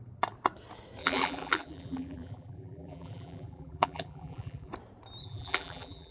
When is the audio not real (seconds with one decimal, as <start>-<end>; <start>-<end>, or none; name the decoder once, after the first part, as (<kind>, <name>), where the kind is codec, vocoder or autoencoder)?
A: 1.0-4.7 (vocoder, BigVGAN v2); 5.2-6.1

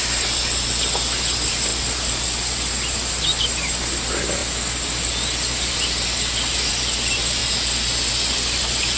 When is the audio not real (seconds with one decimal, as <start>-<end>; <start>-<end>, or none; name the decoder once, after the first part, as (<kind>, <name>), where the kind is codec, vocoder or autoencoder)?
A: 0.0-1.7 (vocoder, BigVGAN v2); 2.9-7.4; 8.1-9.0

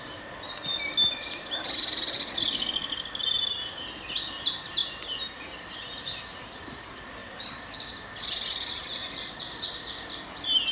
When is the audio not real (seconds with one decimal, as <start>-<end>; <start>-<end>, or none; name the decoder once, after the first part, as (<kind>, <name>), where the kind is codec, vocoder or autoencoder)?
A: none

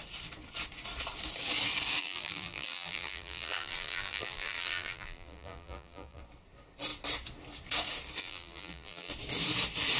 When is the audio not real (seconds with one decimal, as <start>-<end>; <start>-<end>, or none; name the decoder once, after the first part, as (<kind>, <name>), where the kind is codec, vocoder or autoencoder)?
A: 2.0-6.2 (vocoder, BigVGAN v2); 8.2-9.1

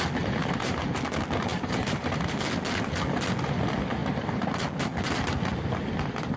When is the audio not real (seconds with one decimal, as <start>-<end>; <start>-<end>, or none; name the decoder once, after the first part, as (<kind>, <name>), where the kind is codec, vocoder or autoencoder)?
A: 0.4-1.0 (vocoder, BigVGAN v2); 1.5-2.4

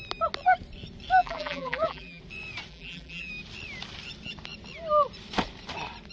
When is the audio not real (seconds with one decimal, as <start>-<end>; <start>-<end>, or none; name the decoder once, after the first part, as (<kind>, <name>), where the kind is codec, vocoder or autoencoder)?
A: 1.2-2.2 (vocoder, BigVGAN v2); 2.7-3.3

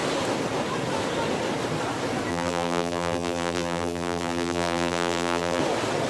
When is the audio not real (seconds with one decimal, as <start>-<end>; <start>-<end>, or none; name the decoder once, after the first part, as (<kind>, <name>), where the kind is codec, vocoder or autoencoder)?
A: 2.3-5.6 (vocoder, BigVGAN v2)